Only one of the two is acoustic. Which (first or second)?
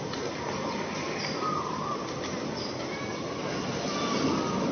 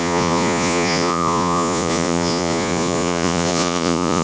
first